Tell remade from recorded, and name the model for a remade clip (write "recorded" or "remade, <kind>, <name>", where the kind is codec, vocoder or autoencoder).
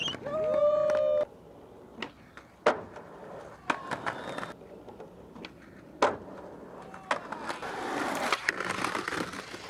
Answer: recorded